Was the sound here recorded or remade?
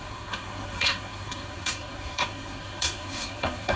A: remade